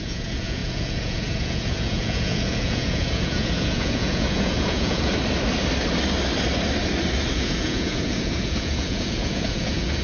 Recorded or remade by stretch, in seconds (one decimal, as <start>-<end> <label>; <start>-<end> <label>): 0.0-5.1 remade; 5.1-7.3 recorded; 7.3-10.0 remade